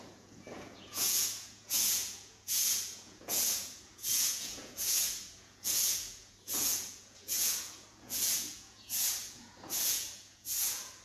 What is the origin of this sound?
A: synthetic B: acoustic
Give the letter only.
A